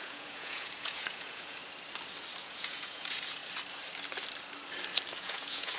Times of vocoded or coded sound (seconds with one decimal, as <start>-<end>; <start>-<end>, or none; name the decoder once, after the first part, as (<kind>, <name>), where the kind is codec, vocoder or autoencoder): 0.0-1.6 (vocoder, Vocos); 2.4-3.4; 5.2-5.8